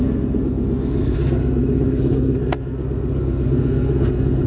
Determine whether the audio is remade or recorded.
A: remade